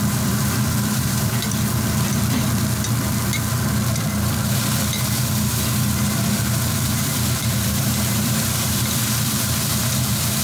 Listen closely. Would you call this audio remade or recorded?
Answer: remade